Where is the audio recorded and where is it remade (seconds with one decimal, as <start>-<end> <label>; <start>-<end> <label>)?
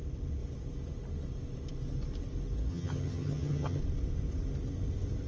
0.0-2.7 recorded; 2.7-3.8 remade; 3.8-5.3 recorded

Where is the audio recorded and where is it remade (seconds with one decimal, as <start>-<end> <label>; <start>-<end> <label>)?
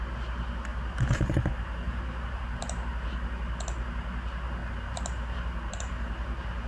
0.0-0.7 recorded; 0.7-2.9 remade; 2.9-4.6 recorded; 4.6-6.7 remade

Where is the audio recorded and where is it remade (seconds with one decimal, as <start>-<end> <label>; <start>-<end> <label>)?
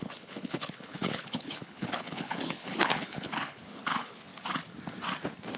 0.0-4.3 remade; 4.3-5.6 recorded